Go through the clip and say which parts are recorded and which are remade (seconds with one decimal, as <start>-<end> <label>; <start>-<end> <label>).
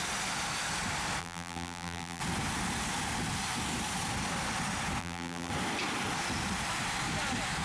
0.0-1.2 recorded; 1.2-2.2 remade; 2.2-5.0 recorded; 5.0-5.5 remade; 5.5-7.6 recorded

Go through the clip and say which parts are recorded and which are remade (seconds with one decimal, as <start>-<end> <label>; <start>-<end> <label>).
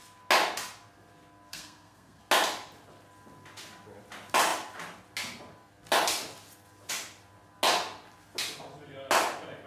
0.0-1.5 recorded; 1.5-2.2 remade; 2.2-9.7 recorded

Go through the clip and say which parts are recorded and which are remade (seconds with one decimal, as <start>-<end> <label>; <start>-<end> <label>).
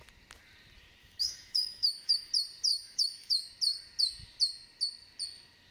0.0-1.0 recorded; 1.0-2.3 remade; 2.3-2.7 recorded; 2.7-3.5 remade; 3.5-5.7 recorded